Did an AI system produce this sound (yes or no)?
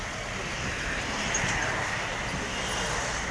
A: no